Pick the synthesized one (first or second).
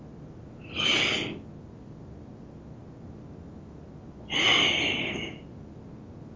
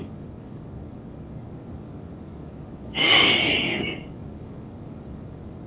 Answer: second